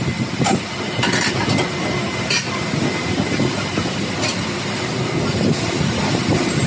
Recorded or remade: recorded